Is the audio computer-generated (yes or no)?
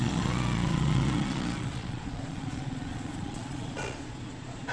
yes